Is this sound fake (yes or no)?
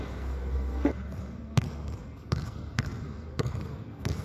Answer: yes